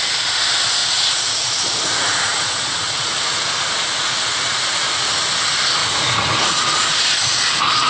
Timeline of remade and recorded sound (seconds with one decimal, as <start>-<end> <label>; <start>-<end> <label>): 0.0-0.8 recorded; 0.8-5.1 remade; 5.1-5.8 recorded; 5.8-6.6 remade; 6.6-7.9 recorded